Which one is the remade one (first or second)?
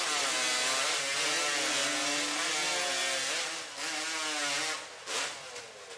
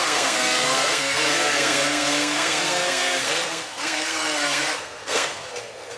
second